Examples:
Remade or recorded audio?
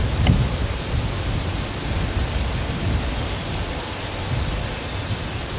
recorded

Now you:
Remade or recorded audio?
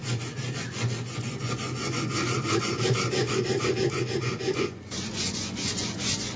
remade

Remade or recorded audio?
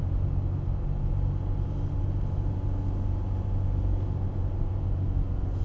recorded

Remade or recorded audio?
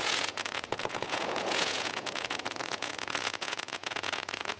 remade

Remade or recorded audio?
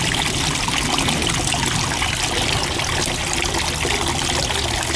recorded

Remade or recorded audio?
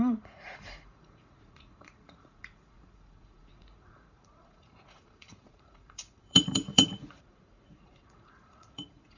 remade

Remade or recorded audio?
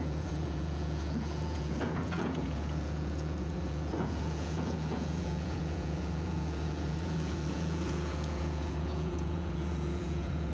remade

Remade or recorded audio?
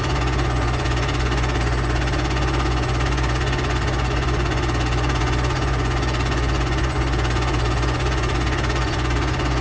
remade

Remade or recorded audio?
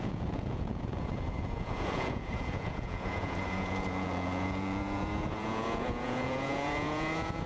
remade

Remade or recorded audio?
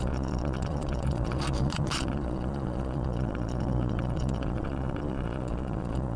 remade